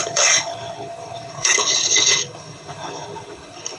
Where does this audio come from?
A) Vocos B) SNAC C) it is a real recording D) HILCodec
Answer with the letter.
D